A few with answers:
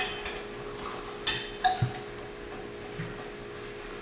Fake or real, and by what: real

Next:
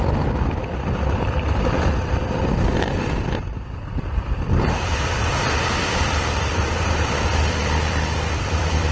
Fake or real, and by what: fake, vocoder, BigVGAN v2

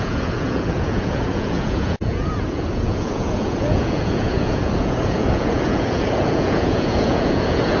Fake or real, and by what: fake, vocoder, Vocos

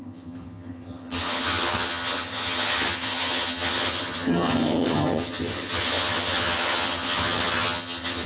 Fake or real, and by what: fake, vocoder, HiFi-GAN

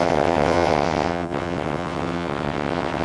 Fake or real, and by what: fake, vocoder, WaveNeXt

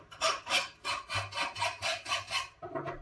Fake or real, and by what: real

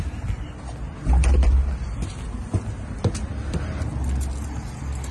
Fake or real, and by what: real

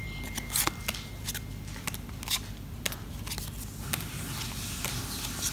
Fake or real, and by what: real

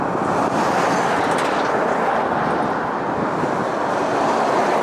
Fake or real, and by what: real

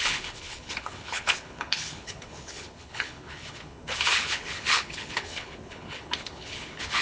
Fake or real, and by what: fake, codec, HILCodec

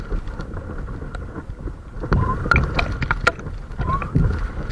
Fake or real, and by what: real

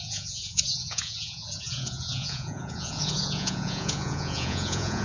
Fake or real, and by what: fake, vocoder, Vocos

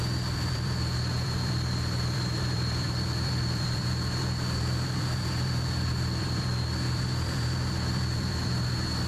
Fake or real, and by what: fake, vocoder, BigVGAN v2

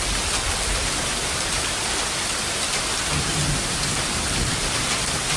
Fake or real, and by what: real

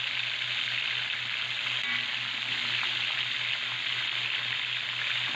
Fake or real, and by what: real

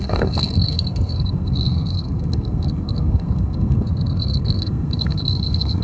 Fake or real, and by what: fake, codec, SNAC